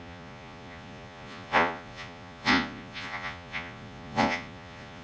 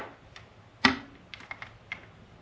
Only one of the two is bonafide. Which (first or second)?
second